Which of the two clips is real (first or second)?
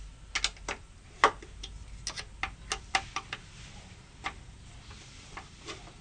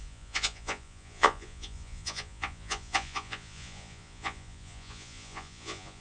first